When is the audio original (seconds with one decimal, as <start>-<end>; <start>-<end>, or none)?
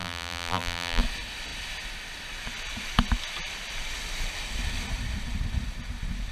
1.0-6.3